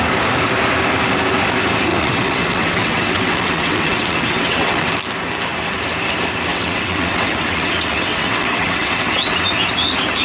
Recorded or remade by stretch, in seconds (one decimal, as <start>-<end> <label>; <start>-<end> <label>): 0.0-1.9 recorded; 1.9-4.9 remade; 4.9-6.5 recorded; 6.5-9.5 remade; 9.5-10.2 recorded

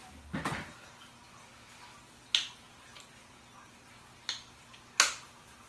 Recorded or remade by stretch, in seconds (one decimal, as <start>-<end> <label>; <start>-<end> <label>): 0.0-5.7 recorded